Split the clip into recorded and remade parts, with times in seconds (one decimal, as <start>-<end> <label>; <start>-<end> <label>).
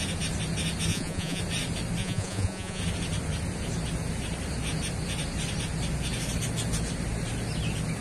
0.0-0.9 recorded; 0.9-1.4 remade; 1.4-2.0 recorded; 2.0-2.8 remade; 2.8-8.0 recorded